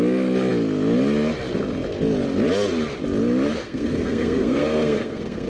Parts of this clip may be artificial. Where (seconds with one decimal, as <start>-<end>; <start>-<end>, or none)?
3.6-5.5

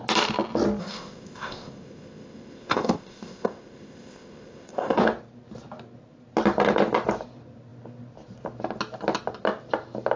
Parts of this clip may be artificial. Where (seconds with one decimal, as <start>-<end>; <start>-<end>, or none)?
0.8-5.0